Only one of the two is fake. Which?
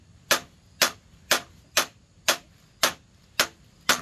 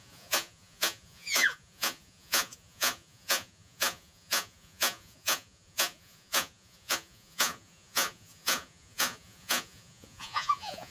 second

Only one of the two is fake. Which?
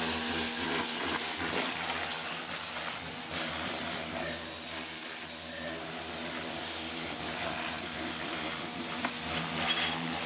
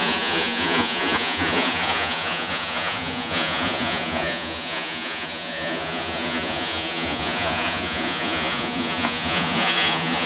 second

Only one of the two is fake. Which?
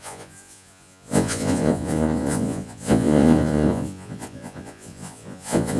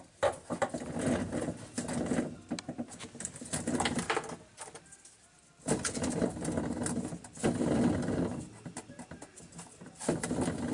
first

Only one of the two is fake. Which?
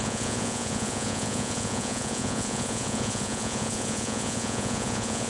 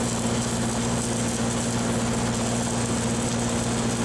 first